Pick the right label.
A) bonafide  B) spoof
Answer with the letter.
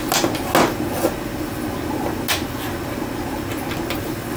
A